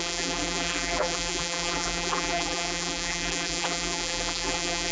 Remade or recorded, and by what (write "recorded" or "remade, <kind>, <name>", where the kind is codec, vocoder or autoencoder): remade, vocoder, BigVGAN v2